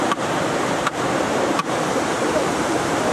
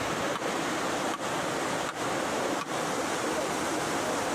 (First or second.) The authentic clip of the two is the second